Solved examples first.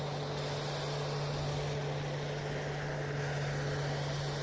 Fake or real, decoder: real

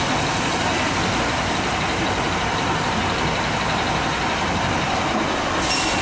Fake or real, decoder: real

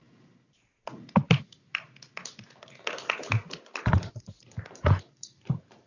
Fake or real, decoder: real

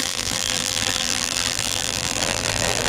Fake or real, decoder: fake, vocoder, BigVGAN v2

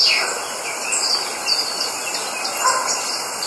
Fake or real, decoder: real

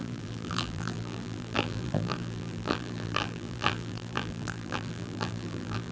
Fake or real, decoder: fake, vocoder, BigVGAN v2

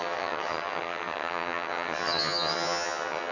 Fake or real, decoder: fake, vocoder, HiFi-GAN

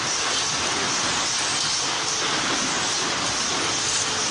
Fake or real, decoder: real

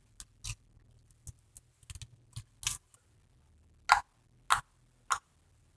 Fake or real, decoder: real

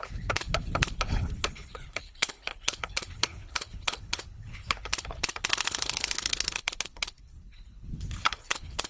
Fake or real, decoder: fake, codec, HILCodec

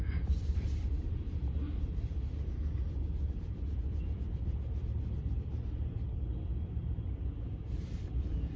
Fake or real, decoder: fake, vocoder, BigVGAN v2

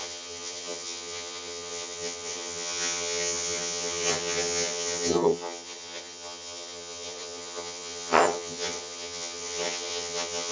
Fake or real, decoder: fake, vocoder, HiFi-GAN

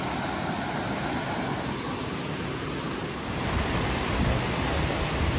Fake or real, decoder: real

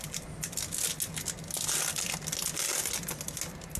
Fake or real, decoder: real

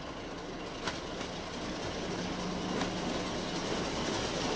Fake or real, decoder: real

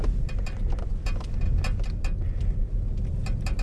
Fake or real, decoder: real